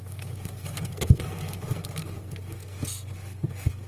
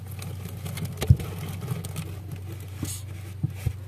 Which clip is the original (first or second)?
second